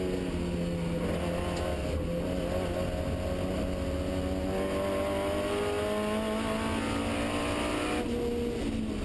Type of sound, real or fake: real